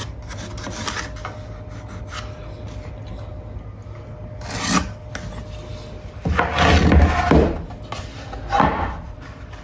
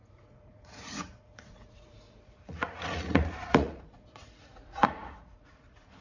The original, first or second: first